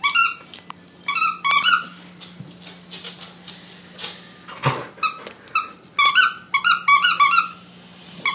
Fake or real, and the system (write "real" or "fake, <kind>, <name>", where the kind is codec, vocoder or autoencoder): real